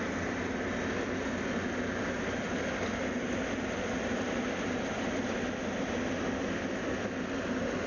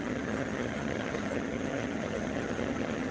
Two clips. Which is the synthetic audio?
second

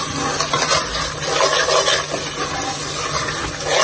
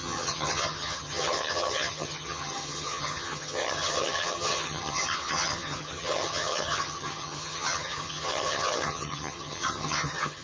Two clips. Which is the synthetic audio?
second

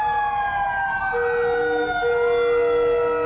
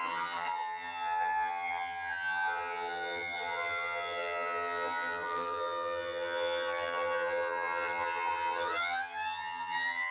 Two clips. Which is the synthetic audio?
second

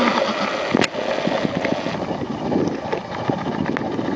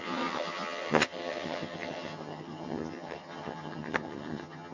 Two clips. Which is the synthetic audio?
second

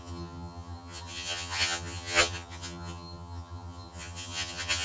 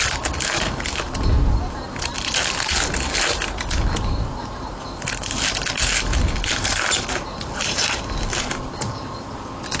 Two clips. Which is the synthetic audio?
first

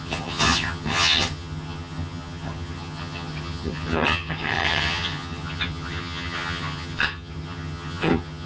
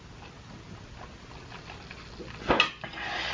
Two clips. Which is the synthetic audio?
first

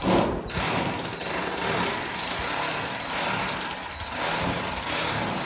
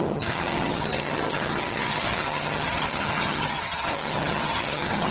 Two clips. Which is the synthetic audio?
second